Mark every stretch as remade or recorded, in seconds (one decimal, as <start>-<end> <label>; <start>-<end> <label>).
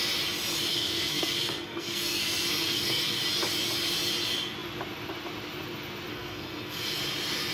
0.0-0.7 recorded; 0.7-3.2 remade; 3.2-6.1 recorded; 6.1-7.0 remade; 7.0-7.5 recorded